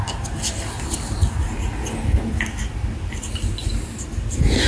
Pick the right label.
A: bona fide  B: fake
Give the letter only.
A